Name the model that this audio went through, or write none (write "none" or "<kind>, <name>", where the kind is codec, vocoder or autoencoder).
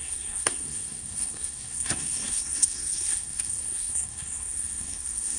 codec, SNAC